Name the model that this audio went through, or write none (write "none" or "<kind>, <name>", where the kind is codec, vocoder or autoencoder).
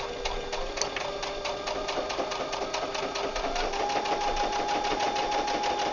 none